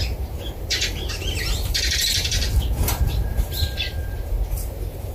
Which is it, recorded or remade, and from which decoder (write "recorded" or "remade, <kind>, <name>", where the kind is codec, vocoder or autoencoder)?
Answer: remade, vocoder, BigVGAN v2